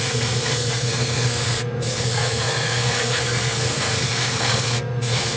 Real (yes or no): no